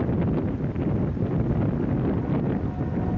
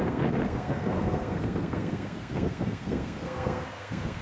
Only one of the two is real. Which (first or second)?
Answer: first